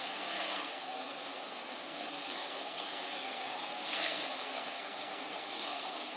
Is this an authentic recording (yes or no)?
no